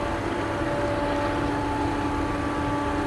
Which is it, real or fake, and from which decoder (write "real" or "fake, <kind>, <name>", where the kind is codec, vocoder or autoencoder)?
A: real